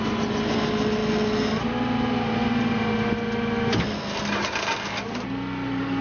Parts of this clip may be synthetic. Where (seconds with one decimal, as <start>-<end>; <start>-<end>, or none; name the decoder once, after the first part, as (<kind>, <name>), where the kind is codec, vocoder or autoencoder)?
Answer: none